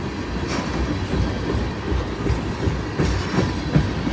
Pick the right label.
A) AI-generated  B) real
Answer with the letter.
B